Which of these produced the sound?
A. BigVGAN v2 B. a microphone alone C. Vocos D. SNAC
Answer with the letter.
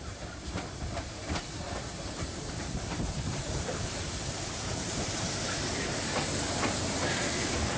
A